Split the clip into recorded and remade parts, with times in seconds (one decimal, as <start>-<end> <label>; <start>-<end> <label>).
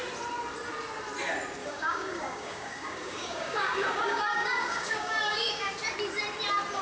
0.0-1.6 recorded; 1.6-5.7 remade; 5.7-6.8 recorded